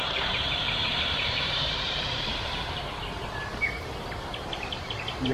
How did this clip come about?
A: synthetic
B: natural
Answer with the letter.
A